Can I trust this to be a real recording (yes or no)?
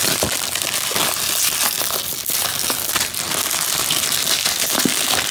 yes